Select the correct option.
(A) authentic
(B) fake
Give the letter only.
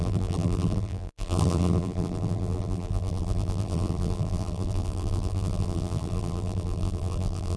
B